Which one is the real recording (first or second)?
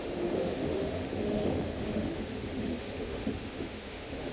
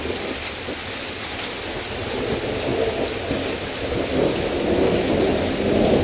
second